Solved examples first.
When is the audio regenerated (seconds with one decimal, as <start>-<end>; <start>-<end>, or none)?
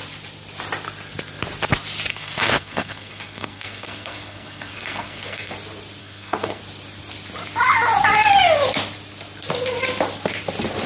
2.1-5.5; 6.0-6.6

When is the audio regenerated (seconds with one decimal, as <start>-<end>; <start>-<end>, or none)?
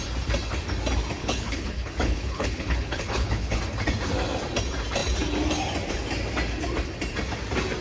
1.2-3.6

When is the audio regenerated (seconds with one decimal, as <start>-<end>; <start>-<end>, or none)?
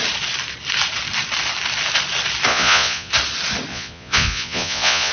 2.5-3.1; 3.7-5.1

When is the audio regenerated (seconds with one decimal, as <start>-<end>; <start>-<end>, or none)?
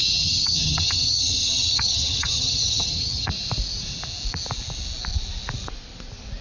0.0-3.3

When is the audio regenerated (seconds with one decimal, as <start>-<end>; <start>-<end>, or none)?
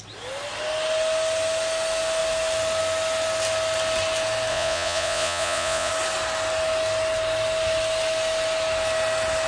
4.5-5.9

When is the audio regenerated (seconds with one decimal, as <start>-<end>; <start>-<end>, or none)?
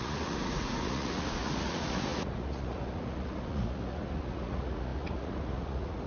0.0-6.1